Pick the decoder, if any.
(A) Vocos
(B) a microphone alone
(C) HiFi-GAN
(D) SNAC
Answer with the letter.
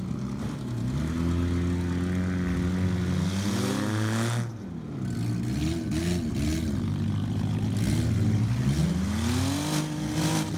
B